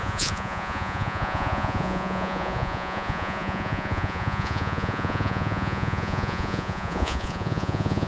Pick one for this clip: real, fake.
fake